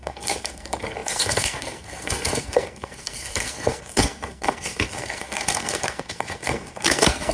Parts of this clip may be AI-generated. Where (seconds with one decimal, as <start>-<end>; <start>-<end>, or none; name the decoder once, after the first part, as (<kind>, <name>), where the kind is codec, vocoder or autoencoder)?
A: 0.0-7.3 (codec, SNAC)